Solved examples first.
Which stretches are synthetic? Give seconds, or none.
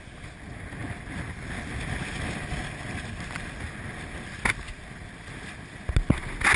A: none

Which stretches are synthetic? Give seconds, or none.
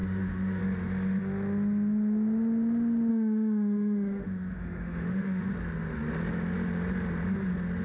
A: 0.0-0.6 (autoencoder, DAC-VAE); 3.1-5.5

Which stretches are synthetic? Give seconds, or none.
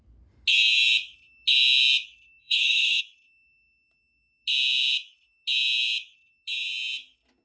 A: 2.4-3.0 (autoencoder, DAC-VAE)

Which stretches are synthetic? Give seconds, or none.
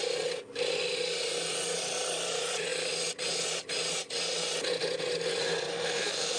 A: 5.7-6.4 (autoencoder, DAC-VAE)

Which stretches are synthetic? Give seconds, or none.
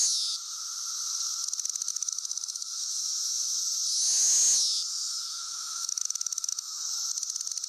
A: 1.9-3.6 (autoencoder, DAC-VAE); 4.9-6.9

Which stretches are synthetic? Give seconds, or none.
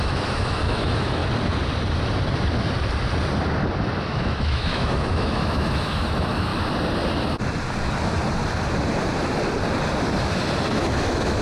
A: 0.0-1.2 (autoencoder, DAC-VAE); 4.0-6.5; 10.7-11.4